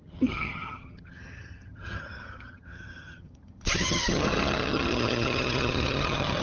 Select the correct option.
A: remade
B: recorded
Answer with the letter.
A